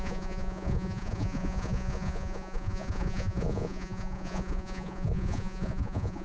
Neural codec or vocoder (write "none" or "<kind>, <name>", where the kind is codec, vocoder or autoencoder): vocoder, Vocos